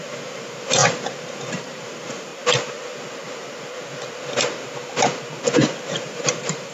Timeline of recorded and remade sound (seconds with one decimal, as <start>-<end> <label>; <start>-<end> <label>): 0.0-2.3 remade; 2.3-5.9 recorded; 5.9-6.7 remade